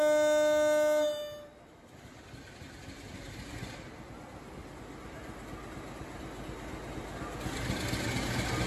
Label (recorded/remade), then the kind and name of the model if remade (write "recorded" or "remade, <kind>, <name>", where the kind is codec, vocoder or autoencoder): recorded